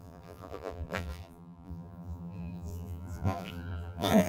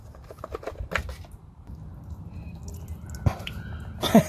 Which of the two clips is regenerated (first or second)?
first